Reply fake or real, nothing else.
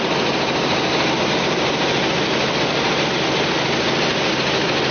real